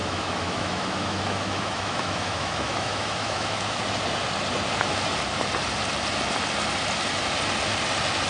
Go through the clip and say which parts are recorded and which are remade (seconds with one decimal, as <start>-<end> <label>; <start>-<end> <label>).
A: 0.0-3.8 remade; 3.8-8.3 recorded

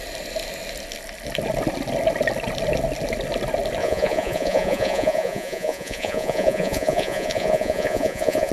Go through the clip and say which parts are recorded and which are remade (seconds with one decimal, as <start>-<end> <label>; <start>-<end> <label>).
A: 0.0-3.8 recorded; 3.8-8.5 remade

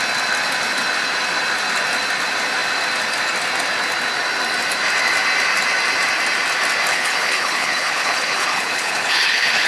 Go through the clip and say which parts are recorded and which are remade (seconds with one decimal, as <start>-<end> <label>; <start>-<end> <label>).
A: 0.0-6.9 recorded; 6.9-9.7 remade